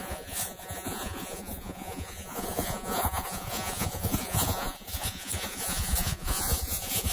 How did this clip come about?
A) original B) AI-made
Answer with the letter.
B